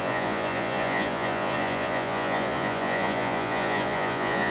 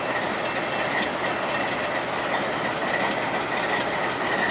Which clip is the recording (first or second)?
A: second